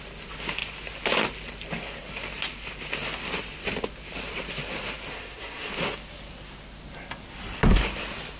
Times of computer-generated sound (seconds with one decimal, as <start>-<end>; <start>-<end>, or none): 5.1-5.7